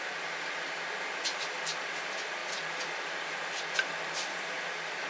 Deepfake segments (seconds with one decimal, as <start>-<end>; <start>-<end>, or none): none